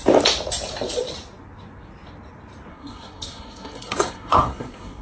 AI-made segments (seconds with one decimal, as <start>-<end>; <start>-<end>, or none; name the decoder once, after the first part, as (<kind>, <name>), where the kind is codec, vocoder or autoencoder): 2.7-5.0 (codec, SNAC)